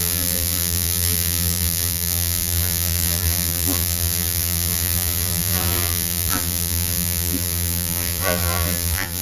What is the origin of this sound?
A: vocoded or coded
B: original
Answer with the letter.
A